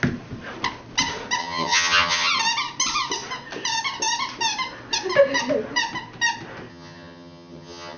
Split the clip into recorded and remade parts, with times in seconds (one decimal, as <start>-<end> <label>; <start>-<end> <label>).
0.0-1.4 recorded; 1.4-2.3 remade; 2.3-6.7 recorded; 6.7-8.0 remade